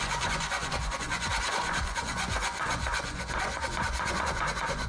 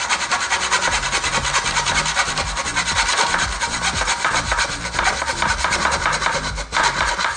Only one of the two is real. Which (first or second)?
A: second